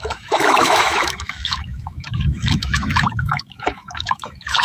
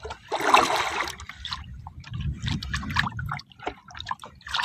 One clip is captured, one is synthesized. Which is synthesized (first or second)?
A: first